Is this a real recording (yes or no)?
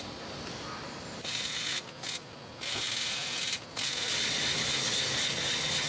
yes